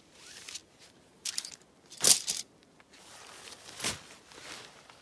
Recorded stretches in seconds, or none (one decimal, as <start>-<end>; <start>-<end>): 0.0-5.0